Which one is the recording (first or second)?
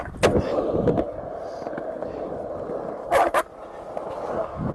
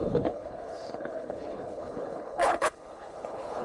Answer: first